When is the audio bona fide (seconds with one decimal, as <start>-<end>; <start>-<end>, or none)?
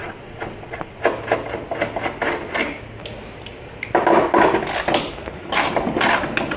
1.0-6.6